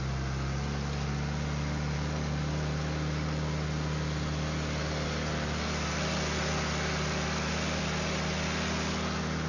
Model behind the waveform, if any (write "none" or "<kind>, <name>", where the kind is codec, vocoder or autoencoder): none